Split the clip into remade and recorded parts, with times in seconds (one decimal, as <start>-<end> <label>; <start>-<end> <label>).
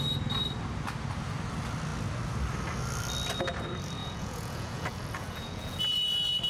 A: 0.0-4.0 recorded; 4.0-5.8 remade; 5.8-6.5 recorded